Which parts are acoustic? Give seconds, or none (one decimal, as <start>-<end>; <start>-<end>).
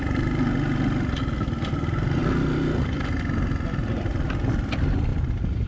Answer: 0.0-5.7